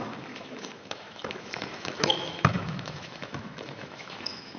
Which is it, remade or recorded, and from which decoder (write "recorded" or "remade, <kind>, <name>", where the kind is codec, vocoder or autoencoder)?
remade, autoencoder, DAC-VAE